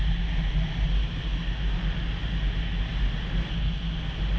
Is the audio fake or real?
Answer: real